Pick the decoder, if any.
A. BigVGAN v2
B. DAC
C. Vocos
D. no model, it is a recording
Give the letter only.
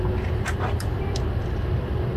D